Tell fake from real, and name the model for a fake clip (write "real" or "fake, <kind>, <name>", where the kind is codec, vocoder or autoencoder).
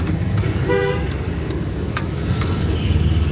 fake, codec, DAC